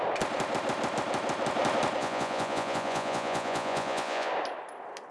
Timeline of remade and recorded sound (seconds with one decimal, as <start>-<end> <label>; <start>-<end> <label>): 0.0-2.0 recorded; 2.0-4.3 remade; 4.3-5.1 recorded